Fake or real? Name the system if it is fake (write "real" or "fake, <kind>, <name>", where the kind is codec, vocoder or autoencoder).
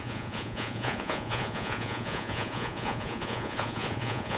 fake, vocoder, Vocos